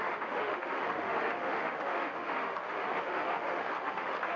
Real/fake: fake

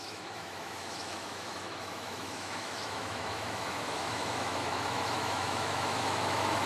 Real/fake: fake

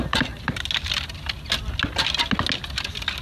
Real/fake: real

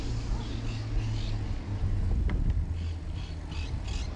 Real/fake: real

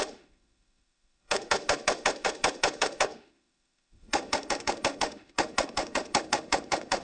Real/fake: fake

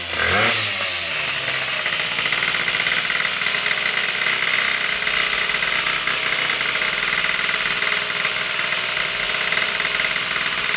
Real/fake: real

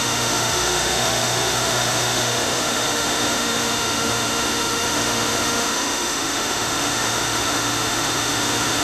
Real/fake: fake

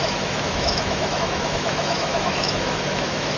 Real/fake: fake